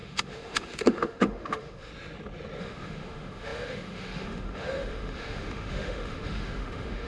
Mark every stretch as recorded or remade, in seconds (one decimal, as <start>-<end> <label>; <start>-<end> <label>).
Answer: 0.0-1.9 remade; 1.9-2.6 recorded; 2.6-7.1 remade